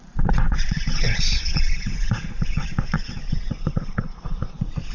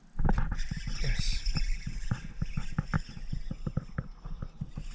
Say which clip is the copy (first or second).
first